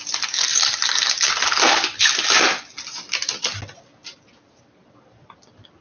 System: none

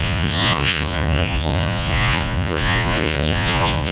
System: vocoder, Vocos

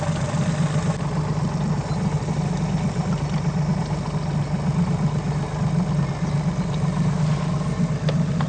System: none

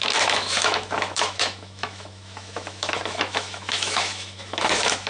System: autoencoder, DAC-VAE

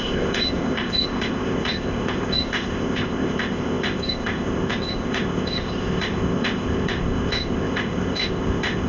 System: codec, ZipCodec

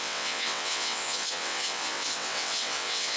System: vocoder, WaveNeXt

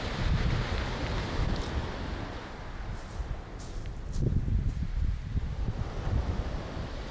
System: none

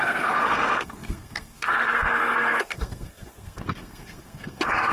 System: codec, SNAC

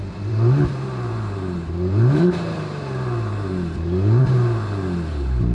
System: vocoder, BigVGAN v2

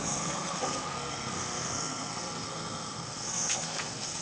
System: codec, SNAC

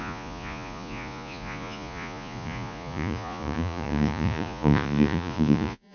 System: vocoder, Vocos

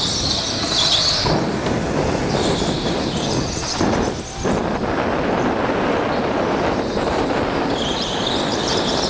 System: none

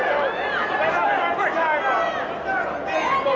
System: none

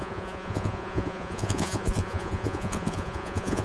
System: vocoder, Vocos